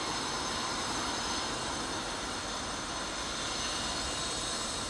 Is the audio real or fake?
real